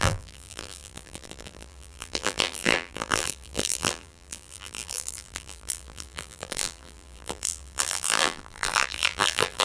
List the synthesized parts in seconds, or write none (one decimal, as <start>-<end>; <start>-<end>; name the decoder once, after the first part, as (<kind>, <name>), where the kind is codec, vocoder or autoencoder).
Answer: 0.0-9.6 (vocoder, BigVGAN v2)